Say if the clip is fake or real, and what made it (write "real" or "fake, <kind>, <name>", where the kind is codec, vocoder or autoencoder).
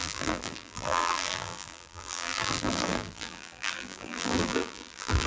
fake, vocoder, BigVGAN v2